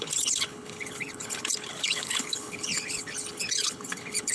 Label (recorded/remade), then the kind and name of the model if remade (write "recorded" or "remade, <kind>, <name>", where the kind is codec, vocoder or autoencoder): remade, codec, HILCodec